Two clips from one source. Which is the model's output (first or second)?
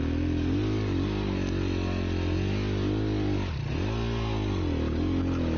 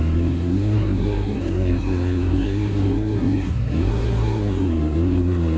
second